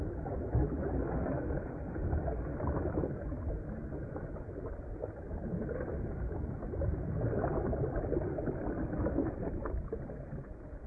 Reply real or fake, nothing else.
real